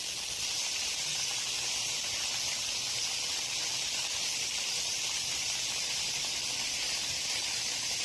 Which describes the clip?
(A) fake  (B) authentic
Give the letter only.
A